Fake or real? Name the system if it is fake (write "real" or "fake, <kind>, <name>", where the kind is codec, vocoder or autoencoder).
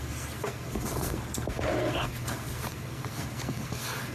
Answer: fake, codec, SNAC